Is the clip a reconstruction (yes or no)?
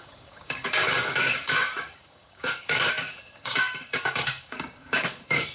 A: yes